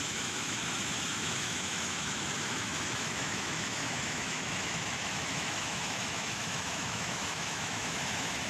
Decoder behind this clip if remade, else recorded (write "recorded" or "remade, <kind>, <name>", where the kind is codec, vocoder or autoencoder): remade, autoencoder, DAC-VAE